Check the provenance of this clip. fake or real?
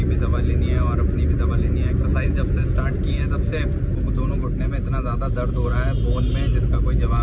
real